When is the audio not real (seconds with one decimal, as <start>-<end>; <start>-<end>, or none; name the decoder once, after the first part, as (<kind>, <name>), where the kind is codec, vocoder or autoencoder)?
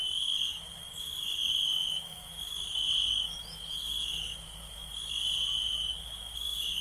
0.0-5.2 (autoencoder, DAC-VAE); 6.0-6.8